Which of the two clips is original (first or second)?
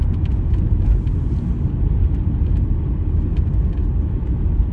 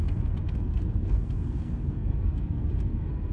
first